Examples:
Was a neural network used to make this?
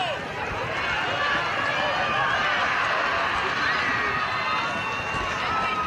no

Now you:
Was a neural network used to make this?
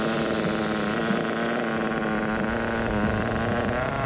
no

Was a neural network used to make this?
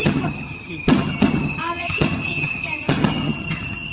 yes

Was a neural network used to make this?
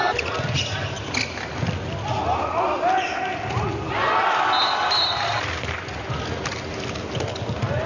no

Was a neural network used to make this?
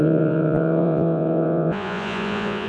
yes